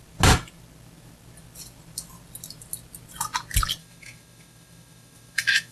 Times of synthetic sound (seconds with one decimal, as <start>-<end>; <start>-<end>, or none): 3.8-5.7